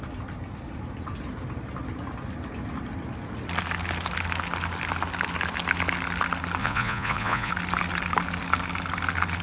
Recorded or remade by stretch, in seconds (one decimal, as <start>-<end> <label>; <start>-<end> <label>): 0.0-6.6 recorded; 6.6-7.5 remade; 7.5-9.4 recorded